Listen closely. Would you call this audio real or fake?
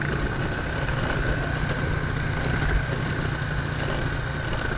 real